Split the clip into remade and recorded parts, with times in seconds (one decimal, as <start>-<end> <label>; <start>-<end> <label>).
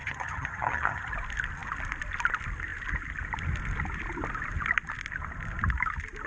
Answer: 0.0-1.1 remade; 1.1-6.3 recorded